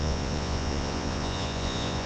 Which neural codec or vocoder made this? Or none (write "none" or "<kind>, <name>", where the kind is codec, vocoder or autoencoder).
vocoder, Vocos